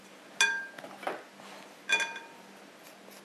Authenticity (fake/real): real